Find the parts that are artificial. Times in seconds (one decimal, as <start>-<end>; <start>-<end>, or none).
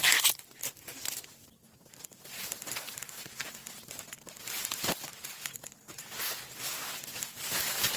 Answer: none